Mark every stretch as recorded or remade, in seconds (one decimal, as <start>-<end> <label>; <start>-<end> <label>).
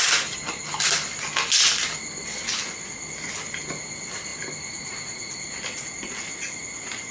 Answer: 0.0-7.1 recorded